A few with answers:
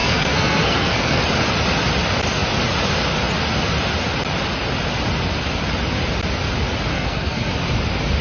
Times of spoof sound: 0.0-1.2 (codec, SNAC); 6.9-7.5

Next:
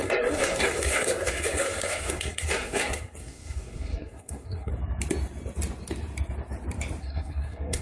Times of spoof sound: 0.0-4.7 (codec, SNAC); 7.0-7.8